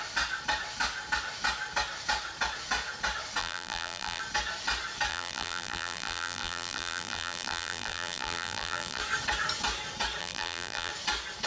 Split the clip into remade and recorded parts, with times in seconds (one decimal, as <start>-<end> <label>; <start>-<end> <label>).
0.0-3.4 recorded; 3.4-4.2 remade; 4.2-5.1 recorded; 5.1-9.0 remade; 9.0-10.2 recorded; 10.2-10.9 remade; 10.9-11.5 recorded